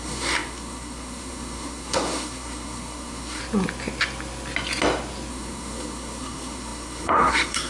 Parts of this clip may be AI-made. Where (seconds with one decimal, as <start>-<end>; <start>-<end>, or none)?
0.0-3.4; 5.3-7.7